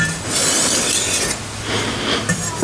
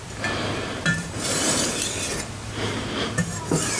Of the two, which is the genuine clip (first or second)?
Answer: first